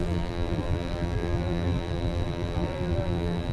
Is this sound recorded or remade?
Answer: remade